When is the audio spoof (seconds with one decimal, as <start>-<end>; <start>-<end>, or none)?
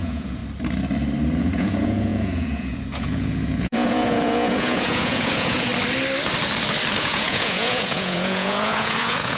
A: 0.0-0.4; 1.4-5.7; 7.0-9.4